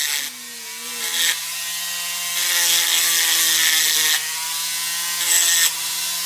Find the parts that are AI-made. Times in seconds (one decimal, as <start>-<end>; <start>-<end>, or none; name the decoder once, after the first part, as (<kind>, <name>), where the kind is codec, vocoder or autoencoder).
none